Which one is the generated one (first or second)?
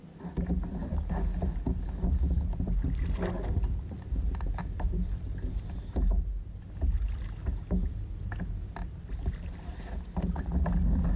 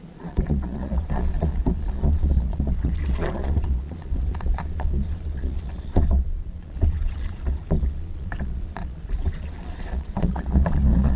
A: second